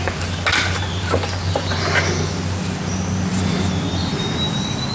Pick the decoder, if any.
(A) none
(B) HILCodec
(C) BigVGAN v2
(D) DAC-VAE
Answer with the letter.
A